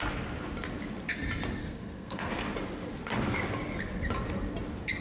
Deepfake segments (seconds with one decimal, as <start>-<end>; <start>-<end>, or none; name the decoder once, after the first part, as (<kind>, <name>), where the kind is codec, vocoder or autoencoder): 1.6-2.3 (codec, SNAC)